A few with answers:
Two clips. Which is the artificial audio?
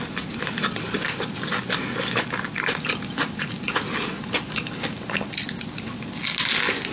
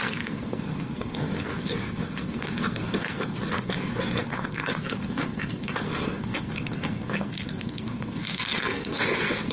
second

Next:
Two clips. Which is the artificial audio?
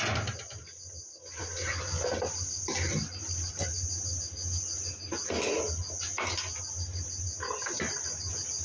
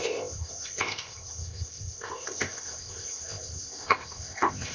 second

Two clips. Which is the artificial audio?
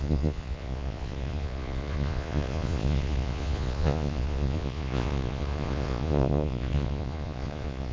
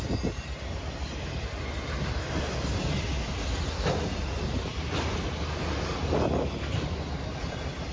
first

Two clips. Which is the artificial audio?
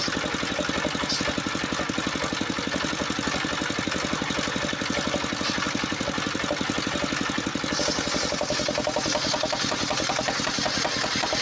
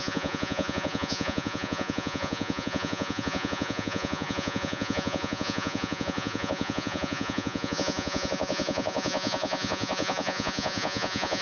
second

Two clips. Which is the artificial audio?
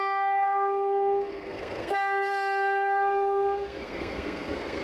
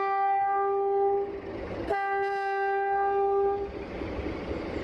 first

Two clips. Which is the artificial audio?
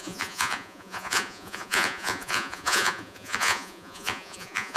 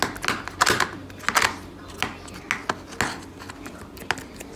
first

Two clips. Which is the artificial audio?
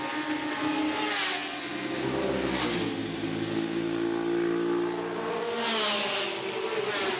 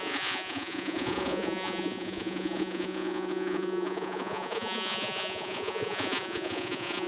second